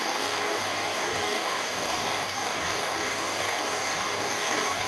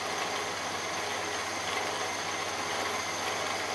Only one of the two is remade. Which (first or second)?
first